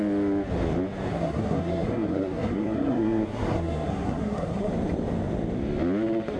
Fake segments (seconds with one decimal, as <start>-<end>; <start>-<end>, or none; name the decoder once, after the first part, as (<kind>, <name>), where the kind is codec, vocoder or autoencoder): 1.1-4.7 (codec, SNAC)